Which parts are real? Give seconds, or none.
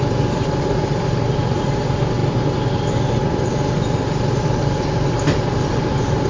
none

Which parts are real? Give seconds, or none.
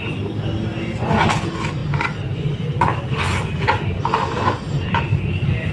0.0-5.7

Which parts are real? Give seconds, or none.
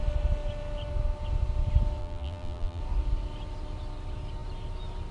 0.0-2.0; 2.8-5.1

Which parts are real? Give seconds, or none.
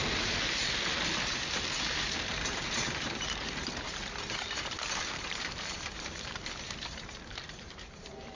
0.6-1.8